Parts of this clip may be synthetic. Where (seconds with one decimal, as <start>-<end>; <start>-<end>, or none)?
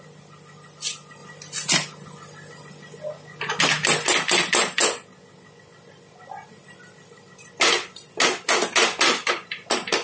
0.0-4.8; 9.1-10.0